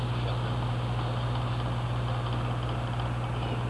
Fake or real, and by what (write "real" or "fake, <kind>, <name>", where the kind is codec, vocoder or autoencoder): real